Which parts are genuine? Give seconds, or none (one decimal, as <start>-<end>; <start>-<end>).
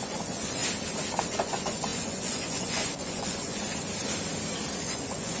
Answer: 0.6-1.2; 3.7-4.8